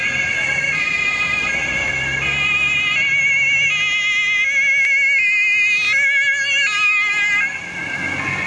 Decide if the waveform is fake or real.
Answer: real